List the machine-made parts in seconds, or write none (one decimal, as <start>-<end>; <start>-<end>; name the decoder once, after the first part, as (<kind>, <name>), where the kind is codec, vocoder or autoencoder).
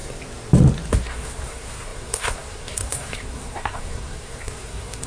0.9-5.1 (codec, SNAC)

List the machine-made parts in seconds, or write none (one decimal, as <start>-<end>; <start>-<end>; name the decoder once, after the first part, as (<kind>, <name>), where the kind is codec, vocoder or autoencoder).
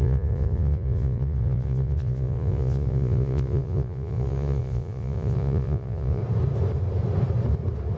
0.0-6.2 (vocoder, Vocos)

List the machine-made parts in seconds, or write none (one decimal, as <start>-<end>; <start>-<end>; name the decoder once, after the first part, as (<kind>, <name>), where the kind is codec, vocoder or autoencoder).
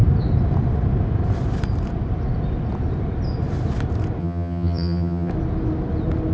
4.2-5.3 (vocoder, HiFi-GAN)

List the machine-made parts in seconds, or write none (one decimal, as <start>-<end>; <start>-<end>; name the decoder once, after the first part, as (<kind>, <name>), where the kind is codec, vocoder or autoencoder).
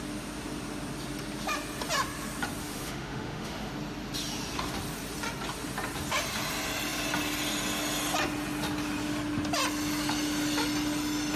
2.6-3.7 (autoencoder, DAC-VAE)